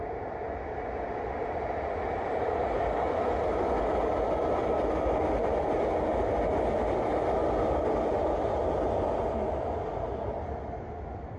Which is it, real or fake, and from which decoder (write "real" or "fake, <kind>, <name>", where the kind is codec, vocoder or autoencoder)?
real